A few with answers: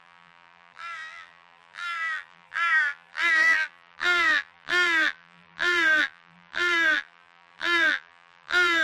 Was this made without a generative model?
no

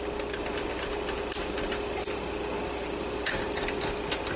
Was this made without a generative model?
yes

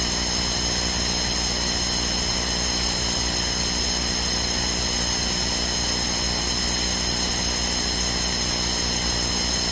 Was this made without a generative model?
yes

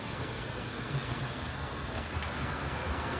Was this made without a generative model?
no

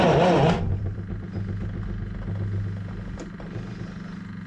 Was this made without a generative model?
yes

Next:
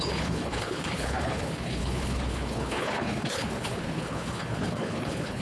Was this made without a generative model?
no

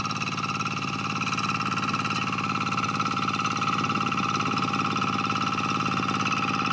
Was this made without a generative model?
yes